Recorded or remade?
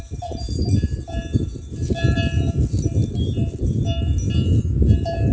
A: recorded